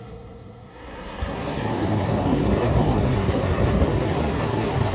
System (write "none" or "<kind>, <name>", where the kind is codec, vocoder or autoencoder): codec, SNAC